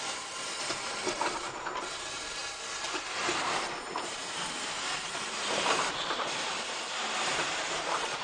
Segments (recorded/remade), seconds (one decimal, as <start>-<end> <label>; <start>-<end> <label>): 0.0-2.4 remade; 2.4-3.4 recorded; 3.4-8.2 remade